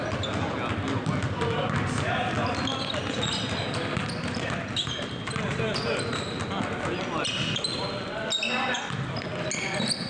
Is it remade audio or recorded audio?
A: recorded